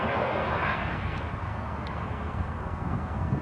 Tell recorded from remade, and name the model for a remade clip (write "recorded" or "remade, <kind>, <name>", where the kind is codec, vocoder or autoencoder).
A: remade, codec, SNAC